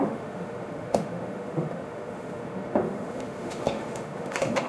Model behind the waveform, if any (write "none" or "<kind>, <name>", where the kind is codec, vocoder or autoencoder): autoencoder, DAC-VAE